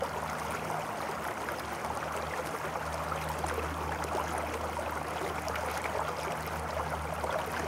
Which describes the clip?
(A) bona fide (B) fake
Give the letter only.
A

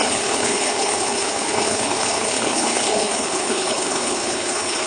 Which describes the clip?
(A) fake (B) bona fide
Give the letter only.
A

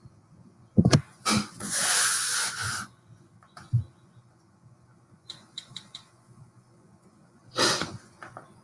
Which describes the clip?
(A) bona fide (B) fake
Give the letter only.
B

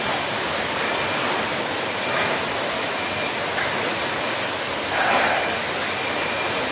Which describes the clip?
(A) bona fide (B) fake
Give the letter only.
A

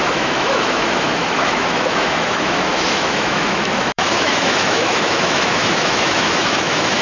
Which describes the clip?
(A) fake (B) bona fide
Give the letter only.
A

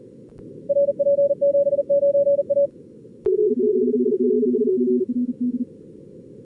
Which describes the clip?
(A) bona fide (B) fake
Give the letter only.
A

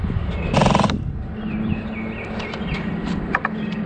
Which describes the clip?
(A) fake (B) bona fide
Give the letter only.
B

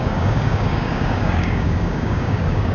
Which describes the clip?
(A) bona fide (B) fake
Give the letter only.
B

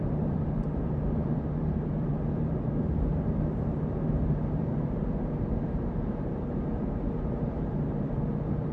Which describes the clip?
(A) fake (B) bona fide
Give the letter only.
A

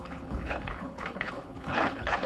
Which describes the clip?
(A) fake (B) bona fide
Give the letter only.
A